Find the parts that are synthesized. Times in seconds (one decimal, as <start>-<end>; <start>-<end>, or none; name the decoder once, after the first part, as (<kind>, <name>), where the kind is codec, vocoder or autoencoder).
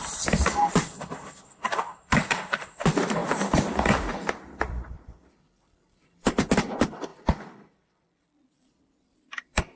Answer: 0.0-9.8 (vocoder, BigVGAN v2)